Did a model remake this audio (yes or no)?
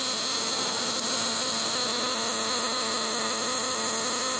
no